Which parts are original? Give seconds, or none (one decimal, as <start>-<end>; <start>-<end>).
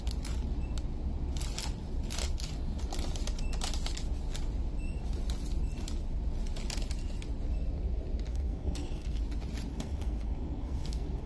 0.0-8.3; 9.2-9.7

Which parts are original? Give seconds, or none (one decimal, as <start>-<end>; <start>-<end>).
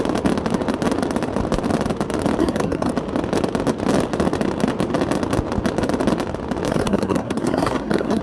0.0-2.4; 2.9-6.7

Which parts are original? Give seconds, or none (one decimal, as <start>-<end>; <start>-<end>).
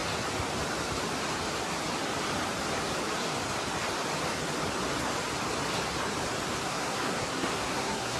0.0-6.6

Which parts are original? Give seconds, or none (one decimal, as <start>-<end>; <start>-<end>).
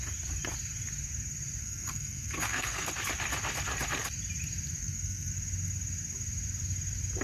0.0-1.6; 2.9-4.8; 5.3-7.2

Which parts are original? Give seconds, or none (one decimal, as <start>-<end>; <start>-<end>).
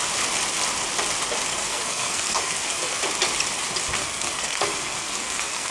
0.0-1.5; 3.0-4.0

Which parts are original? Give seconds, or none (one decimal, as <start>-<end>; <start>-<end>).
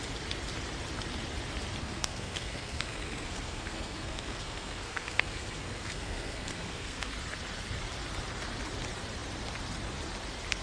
0.0-1.8; 7.1-10.6